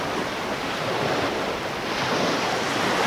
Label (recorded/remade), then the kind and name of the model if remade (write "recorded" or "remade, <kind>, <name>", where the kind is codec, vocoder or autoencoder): recorded